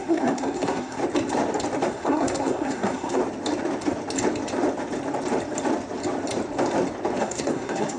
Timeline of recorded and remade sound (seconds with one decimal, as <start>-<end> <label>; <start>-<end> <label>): 0.0-1.0 remade; 1.0-1.9 recorded; 1.9-3.2 remade; 3.2-7.2 recorded; 7.2-8.0 remade